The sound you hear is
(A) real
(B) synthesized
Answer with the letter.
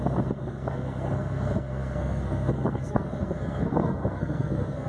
B